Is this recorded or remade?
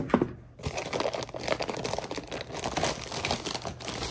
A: recorded